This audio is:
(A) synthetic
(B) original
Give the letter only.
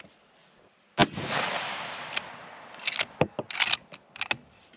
B